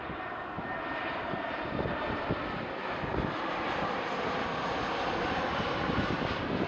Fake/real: fake